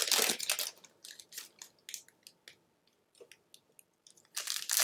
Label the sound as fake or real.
real